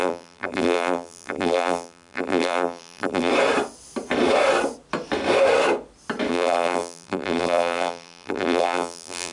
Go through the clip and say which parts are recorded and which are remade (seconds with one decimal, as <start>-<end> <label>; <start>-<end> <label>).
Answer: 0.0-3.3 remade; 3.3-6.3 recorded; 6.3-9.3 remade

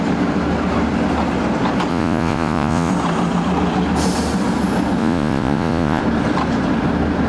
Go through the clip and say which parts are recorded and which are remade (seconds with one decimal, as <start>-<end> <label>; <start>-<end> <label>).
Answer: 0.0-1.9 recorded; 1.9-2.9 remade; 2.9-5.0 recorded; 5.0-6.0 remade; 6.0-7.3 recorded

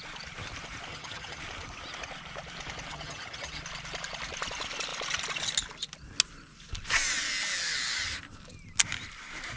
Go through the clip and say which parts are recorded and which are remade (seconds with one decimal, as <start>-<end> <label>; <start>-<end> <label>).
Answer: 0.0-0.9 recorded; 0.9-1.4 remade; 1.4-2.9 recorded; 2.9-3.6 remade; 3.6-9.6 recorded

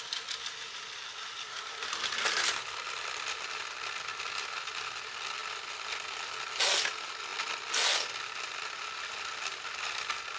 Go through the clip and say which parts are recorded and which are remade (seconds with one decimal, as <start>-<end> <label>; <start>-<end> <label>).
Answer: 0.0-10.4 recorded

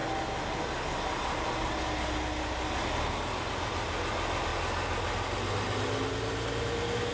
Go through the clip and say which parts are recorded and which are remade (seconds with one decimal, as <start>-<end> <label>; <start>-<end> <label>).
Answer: 0.0-7.1 recorded